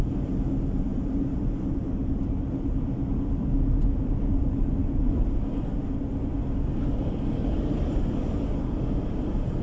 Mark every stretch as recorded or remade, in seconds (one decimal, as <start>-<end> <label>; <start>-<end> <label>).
0.0-9.6 recorded